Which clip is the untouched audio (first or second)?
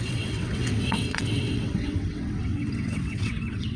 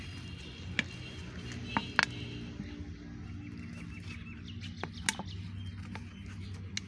second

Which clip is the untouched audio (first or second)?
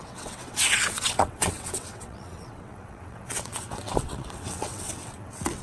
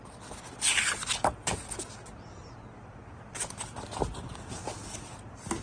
second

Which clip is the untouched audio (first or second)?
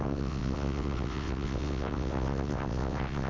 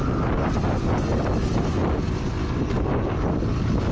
second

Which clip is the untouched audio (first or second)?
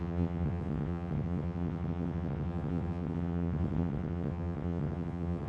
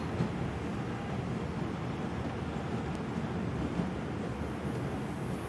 second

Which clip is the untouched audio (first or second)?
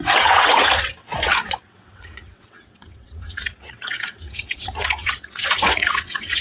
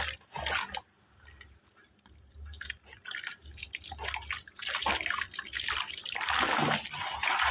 second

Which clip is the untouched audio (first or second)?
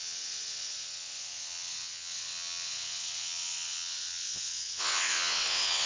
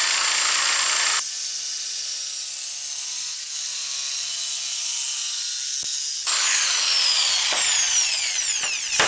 second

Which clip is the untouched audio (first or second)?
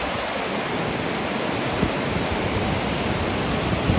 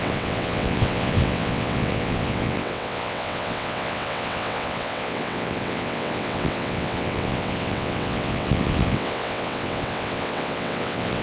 first